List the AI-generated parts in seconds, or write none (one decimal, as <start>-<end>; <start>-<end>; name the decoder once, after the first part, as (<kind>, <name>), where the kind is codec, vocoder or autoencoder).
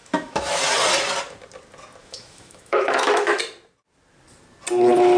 0.0-0.6 (autoencoder, DAC-VAE); 2.0-3.4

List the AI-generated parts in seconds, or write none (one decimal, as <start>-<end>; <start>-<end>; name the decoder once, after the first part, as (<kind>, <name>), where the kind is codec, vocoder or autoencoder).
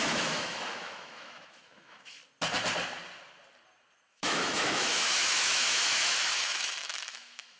0.0-2.2 (autoencoder, DAC-VAE); 4.1-7.6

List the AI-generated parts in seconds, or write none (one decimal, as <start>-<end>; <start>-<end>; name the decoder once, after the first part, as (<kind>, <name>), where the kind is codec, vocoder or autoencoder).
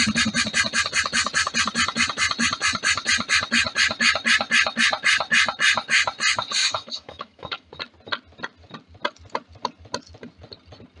6.6-7.7 (autoencoder, DAC-VAE)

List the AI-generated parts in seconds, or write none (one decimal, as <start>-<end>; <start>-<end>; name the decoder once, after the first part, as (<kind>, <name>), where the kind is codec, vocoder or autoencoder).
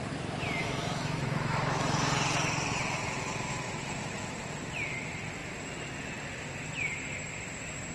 0.6-1.8 (autoencoder, DAC-VAE); 3.5-4.4